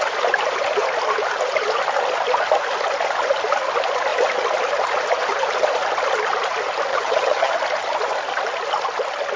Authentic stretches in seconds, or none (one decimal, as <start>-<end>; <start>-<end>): 0.0-6.9; 7.5-9.4